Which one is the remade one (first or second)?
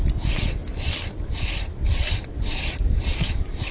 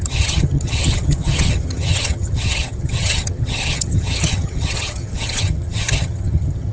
second